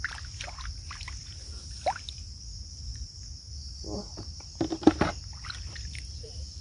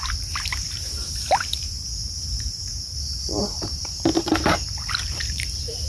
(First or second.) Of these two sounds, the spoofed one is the second